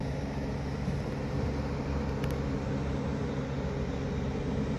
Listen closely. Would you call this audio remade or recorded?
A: recorded